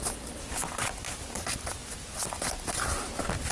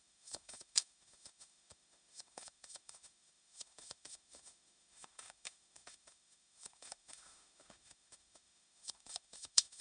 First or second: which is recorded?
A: first